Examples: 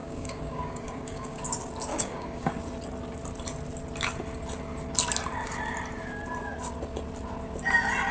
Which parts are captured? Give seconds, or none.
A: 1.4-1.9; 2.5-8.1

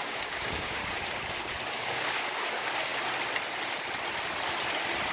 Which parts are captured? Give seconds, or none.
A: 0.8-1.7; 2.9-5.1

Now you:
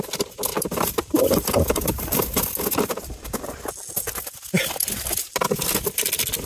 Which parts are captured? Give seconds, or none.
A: 0.0-0.5; 2.4-2.9; 3.6-6.5